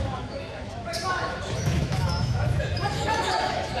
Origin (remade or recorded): remade